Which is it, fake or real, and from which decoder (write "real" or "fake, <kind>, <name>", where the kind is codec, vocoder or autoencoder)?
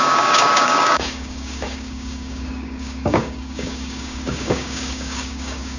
fake, codec, DAC